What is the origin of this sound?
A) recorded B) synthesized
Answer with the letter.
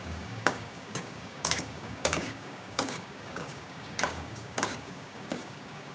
B